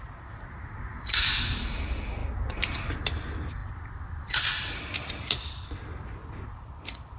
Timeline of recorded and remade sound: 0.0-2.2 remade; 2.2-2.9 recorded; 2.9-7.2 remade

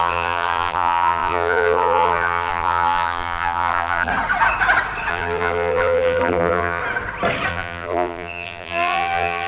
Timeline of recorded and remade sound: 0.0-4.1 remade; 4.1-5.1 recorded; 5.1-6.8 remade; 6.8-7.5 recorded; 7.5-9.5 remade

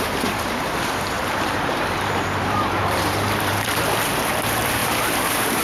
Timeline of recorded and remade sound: 0.0-4.8 remade; 4.8-5.6 recorded

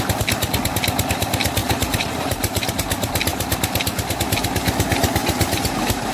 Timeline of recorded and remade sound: 0.0-1.6 recorded; 1.6-2.7 remade; 2.7-5.2 recorded; 5.2-6.1 remade

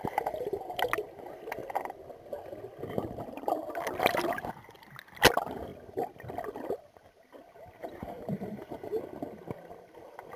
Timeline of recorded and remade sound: 0.0-7.8 recorded; 7.8-9.0 remade; 9.0-10.4 recorded

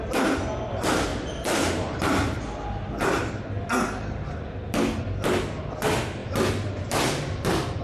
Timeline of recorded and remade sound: 0.0-6.2 recorded; 6.2-7.8 remade